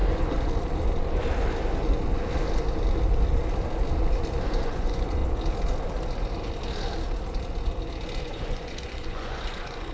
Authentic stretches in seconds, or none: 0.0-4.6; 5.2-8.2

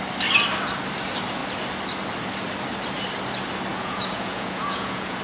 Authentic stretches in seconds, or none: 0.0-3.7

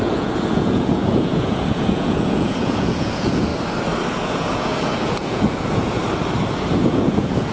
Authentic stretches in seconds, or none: 3.5-4.1; 6.0-6.7